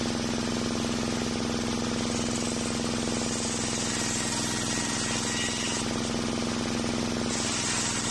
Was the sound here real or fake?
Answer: real